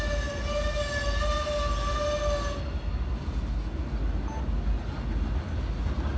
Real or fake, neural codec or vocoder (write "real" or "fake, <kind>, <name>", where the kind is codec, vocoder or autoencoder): real